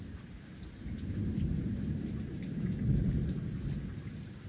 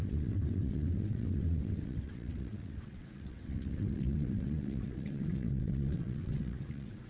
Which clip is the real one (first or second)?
first